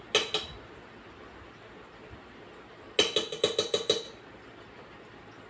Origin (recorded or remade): recorded